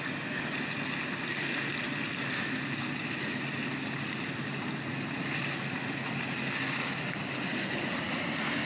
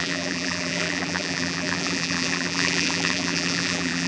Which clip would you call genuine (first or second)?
first